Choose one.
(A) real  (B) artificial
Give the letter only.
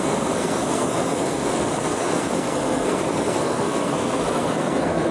B